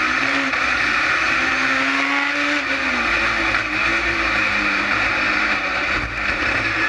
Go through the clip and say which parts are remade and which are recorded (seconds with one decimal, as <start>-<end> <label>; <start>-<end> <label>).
0.0-1.5 remade; 1.5-3.9 recorded; 3.9-6.9 remade